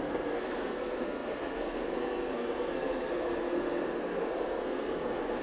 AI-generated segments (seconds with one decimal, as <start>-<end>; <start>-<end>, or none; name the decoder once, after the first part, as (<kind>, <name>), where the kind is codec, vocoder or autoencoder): 0.0-5.4 (codec, SNAC)